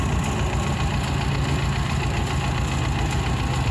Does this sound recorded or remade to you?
recorded